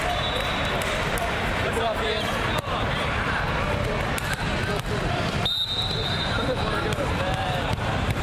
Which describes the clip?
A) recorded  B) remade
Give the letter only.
B